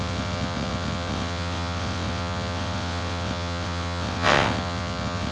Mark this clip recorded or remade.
remade